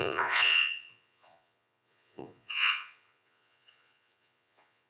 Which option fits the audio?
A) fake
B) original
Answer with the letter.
A